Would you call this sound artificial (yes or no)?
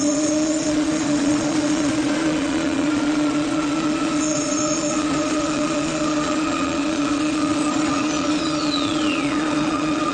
yes